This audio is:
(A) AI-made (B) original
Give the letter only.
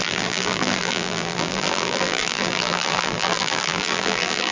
A